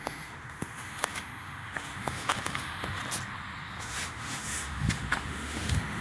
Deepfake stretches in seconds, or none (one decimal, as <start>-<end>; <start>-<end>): 0.0-3.0; 3.8-6.0